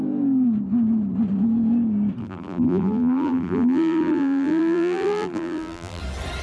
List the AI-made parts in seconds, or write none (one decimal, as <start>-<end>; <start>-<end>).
2.2-6.0